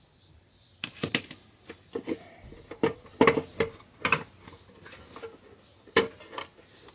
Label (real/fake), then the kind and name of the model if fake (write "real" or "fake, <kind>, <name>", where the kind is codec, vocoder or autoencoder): real